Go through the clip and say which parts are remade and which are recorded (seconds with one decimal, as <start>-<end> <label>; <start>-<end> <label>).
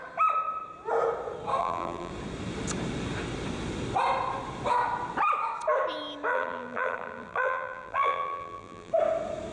0.0-1.6 recorded; 1.6-2.1 remade; 2.1-6.3 recorded; 6.3-8.9 remade; 8.9-9.5 recorded